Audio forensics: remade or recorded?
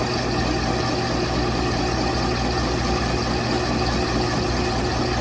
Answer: recorded